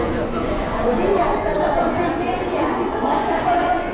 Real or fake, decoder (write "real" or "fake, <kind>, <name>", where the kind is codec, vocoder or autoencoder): fake, vocoder, Vocos